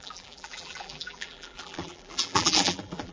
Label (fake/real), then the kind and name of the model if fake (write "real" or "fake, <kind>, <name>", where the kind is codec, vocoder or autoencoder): fake, vocoder, BigVGAN v2